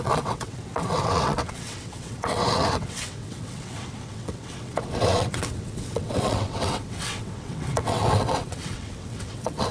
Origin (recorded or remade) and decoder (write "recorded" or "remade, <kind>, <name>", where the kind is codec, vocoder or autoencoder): remade, vocoder, WaveNeXt